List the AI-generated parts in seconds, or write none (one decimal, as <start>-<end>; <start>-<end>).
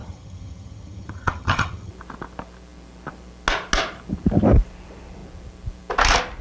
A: 0.0-1.9